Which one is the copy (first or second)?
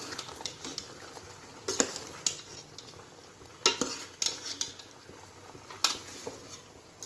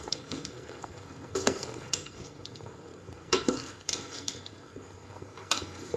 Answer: second